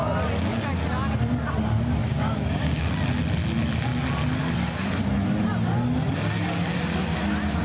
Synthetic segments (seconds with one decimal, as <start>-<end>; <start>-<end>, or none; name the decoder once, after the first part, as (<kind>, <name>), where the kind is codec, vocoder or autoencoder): 2.0-2.9 (codec, DAC)